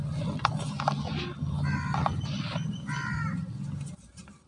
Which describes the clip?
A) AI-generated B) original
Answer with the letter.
B